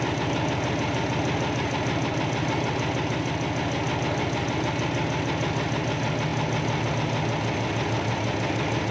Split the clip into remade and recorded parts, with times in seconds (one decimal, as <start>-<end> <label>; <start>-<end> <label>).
0.0-8.9 recorded

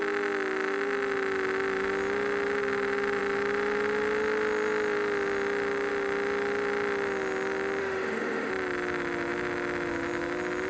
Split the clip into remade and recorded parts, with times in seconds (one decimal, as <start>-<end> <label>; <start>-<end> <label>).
0.0-7.8 recorded; 7.8-8.5 remade; 8.5-10.7 recorded

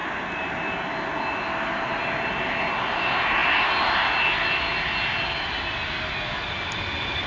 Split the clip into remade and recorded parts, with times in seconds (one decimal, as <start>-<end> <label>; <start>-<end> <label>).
0.0-7.3 recorded

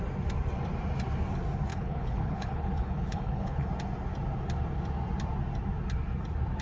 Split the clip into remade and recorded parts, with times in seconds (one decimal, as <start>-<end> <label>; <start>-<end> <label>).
0.0-1.7 recorded; 1.7-3.7 remade; 3.7-6.6 recorded